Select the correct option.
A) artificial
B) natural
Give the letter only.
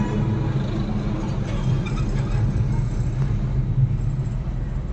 B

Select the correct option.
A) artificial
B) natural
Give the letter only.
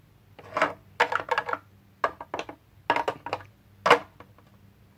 B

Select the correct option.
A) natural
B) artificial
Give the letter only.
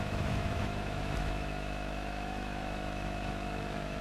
B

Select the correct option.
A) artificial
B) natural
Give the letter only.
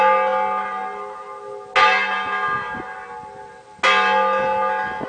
B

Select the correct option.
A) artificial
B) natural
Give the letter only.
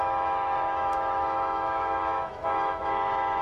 A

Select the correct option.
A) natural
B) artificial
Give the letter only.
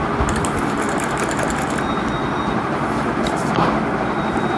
A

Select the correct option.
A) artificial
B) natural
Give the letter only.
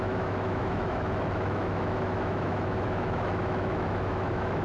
A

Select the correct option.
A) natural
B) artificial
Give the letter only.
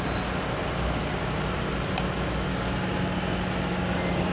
A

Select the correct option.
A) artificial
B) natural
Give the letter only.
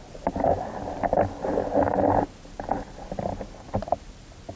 B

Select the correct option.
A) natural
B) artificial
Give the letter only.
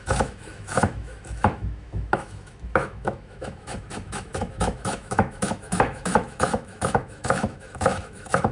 B